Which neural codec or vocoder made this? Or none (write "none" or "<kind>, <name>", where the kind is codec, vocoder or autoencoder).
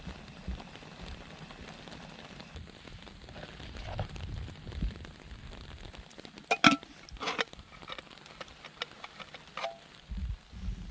none